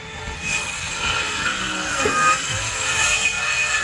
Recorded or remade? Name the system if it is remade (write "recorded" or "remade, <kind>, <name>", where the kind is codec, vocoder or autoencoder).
remade, codec, SNAC